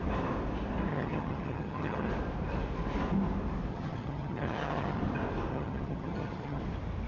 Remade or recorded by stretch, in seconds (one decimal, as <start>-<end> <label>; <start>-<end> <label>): 0.0-0.9 recorded; 0.9-2.1 remade; 2.1-3.7 recorded; 3.7-5.0 remade; 5.0-5.5 recorded; 5.5-6.6 remade; 6.6-7.1 recorded